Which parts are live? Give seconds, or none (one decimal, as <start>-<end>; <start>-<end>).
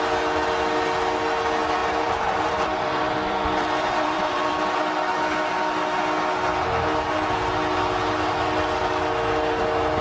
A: 0.0-1.8; 4.8-10.0